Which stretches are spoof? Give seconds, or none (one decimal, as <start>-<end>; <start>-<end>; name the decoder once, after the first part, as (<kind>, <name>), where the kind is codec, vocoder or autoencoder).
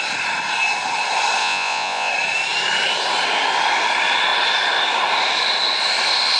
1.4-2.1 (vocoder, Vocos)